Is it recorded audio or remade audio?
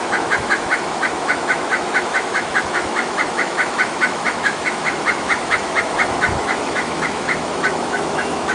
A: remade